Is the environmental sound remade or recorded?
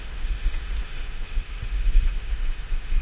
remade